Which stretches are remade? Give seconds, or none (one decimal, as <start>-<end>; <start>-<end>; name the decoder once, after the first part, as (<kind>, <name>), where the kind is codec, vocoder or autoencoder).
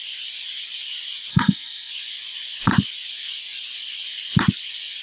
1.3-1.9 (codec, SNAC)